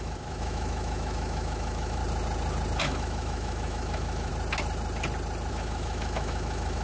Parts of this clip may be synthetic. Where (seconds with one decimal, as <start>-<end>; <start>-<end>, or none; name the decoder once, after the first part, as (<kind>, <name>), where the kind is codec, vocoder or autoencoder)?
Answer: 0.0-2.0 (autoencoder, DAC-VAE); 2.8-4.3; 5.5-6.8